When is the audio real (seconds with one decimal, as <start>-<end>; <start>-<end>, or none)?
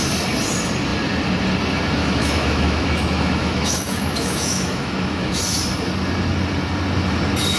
0.0-2.0; 5.4-7.6